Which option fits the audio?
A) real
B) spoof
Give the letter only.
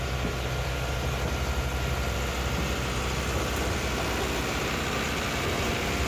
A